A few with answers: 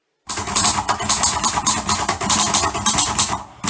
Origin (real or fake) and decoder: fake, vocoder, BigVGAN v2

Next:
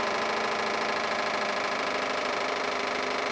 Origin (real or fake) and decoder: fake, vocoder, BigVGAN v2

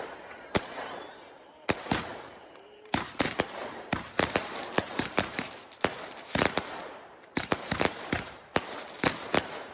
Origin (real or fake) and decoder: fake, vocoder, BigVGAN v2